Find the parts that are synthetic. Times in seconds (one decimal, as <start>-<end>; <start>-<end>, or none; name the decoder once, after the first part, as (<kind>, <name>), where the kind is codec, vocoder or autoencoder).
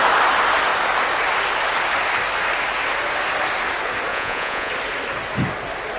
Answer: 4.1-4.7 (vocoder, Vocos)